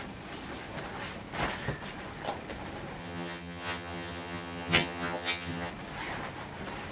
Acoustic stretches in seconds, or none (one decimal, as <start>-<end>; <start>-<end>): 0.0-3.0; 5.7-6.9